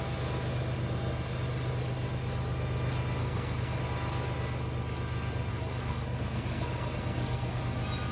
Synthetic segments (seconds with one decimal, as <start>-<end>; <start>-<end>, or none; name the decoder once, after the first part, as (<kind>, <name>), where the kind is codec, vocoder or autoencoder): 3.2-3.8 (codec, SNAC); 5.5-7.6